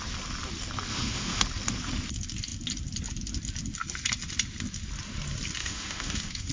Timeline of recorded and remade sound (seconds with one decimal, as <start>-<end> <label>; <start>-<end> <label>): 0.0-0.9 recorded; 0.9-1.4 remade; 1.4-5.6 recorded; 5.6-6.5 remade

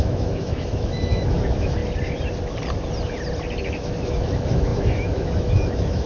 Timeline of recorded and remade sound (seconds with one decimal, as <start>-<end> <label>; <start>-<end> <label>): 0.0-1.8 remade; 1.8-3.6 recorded; 3.6-6.1 remade

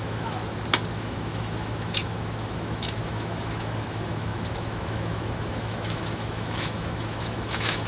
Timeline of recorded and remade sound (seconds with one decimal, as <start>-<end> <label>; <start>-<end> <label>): 0.0-0.4 remade; 0.4-0.9 recorded; 0.9-7.9 remade

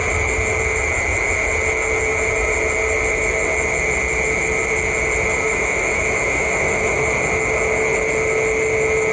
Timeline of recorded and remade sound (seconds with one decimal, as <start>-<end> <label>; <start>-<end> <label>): 0.0-5.5 recorded; 5.5-7.0 remade; 7.0-9.1 recorded

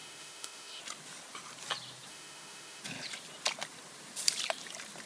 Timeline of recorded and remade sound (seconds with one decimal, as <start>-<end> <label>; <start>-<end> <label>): 0.0-0.8 remade; 0.8-2.1 recorded; 2.1-2.8 remade; 2.8-5.1 recorded

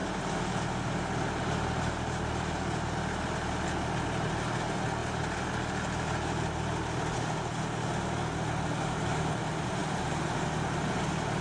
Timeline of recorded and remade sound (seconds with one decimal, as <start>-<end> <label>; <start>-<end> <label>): 0.0-11.4 recorded

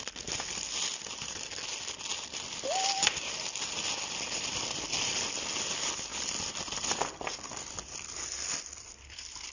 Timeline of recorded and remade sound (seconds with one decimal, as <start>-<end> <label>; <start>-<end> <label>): 0.0-9.5 recorded

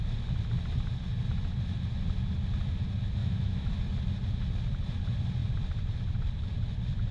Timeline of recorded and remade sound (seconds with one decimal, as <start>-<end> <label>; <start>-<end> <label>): 0.0-3.2 recorded; 3.2-3.7 remade; 3.7-7.1 recorded